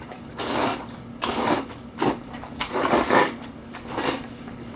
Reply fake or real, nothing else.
fake